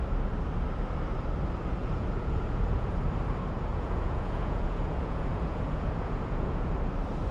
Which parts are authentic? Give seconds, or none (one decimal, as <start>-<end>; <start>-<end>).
0.0-1.8; 2.9-3.7; 6.7-7.3